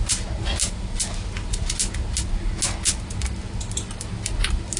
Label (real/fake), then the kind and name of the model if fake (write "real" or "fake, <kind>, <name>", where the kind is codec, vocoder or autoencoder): real